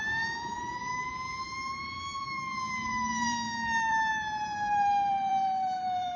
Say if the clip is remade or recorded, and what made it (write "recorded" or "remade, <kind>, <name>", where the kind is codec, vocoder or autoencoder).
remade, vocoder, BigVGAN v2